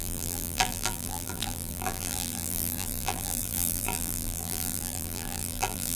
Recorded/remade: remade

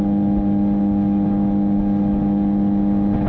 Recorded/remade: recorded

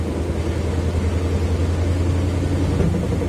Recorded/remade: recorded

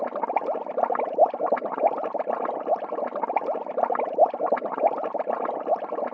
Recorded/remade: recorded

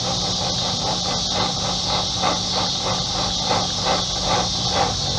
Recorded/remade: recorded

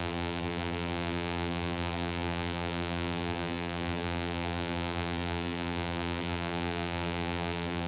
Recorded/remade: remade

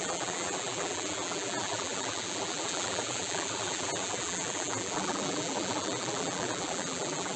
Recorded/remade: remade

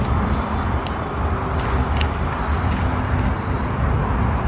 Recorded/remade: recorded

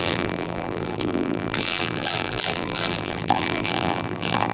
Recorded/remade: remade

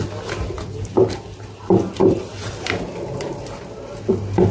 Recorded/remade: recorded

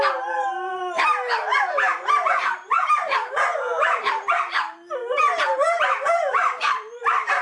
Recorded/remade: remade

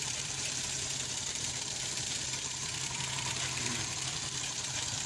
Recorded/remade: remade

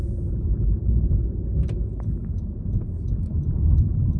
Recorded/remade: remade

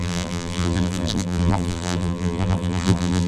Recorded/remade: remade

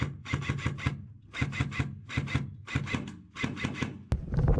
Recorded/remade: recorded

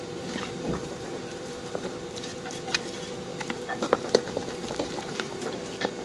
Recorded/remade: remade